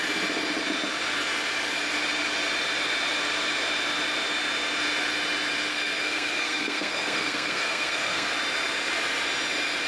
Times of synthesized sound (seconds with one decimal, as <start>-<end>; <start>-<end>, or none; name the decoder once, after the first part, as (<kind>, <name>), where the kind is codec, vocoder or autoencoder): 5.7-8.3 (codec, SNAC)